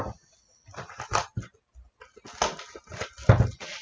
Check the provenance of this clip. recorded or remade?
recorded